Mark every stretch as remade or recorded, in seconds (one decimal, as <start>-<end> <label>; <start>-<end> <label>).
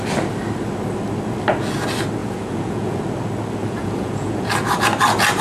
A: 0.0-2.2 recorded; 2.2-3.0 remade; 3.0-3.6 recorded; 3.6-4.5 remade; 4.5-5.4 recorded